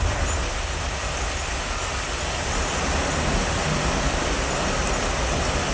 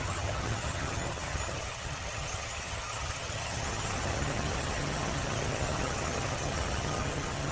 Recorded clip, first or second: first